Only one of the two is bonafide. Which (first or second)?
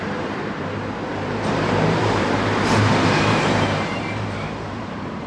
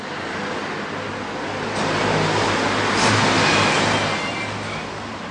second